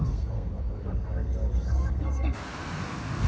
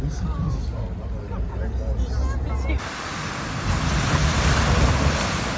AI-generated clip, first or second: first